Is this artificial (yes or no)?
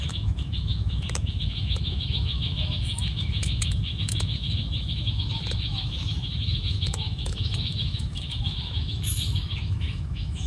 yes